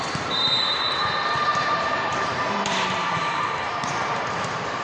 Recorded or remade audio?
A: remade